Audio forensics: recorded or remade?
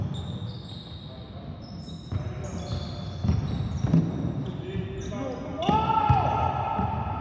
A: recorded